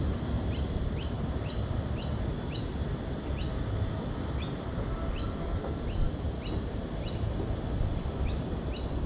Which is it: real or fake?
real